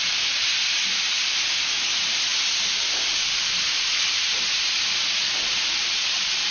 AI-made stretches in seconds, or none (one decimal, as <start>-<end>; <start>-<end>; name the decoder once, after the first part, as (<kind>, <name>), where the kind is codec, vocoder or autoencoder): 0.0-0.8 (vocoder, BigVGAN v2); 1.7-6.5